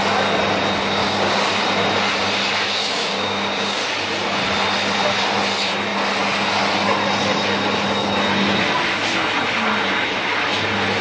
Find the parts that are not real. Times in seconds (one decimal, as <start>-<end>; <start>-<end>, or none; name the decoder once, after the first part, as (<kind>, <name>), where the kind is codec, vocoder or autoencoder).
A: 1.0-1.5 (codec, DAC); 2.8-3.8